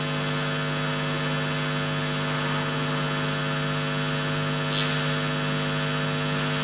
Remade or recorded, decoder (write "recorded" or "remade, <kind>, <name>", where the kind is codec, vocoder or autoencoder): recorded